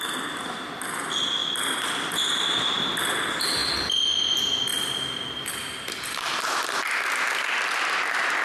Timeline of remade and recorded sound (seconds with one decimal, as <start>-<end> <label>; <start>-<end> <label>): 0.0-4.7 recorded; 4.7-6.4 remade; 6.4-8.4 recorded